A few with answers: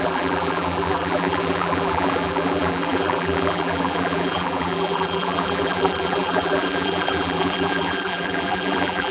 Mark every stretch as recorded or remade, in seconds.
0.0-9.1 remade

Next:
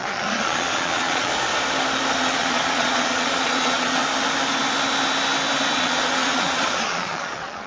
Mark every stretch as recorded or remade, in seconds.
0.0-1.3 remade; 1.3-2.1 recorded; 2.1-4.0 remade; 4.0-5.8 recorded; 5.8-7.7 remade

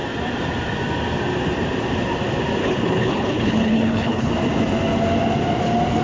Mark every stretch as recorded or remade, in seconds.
0.0-2.6 recorded; 2.6-4.3 remade; 4.3-6.0 recorded

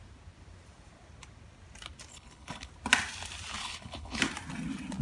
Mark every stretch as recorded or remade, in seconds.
0.0-2.1 recorded; 2.1-2.7 remade; 2.7-3.6 recorded; 3.6-4.2 remade; 4.2-5.0 recorded